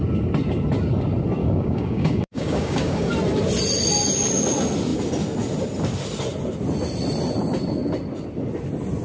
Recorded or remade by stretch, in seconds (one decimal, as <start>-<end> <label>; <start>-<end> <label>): 0.0-1.4 recorded; 1.4-3.1 remade; 3.1-9.0 recorded